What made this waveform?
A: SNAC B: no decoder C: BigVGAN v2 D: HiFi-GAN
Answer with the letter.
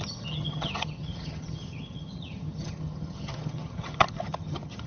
D